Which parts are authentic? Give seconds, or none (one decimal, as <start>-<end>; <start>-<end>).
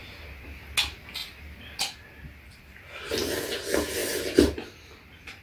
0.0-5.4